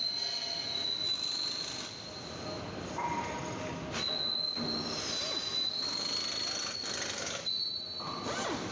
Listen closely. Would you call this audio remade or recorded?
recorded